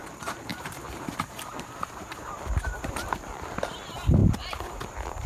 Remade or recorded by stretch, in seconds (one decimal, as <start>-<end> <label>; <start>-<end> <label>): 0.0-5.3 remade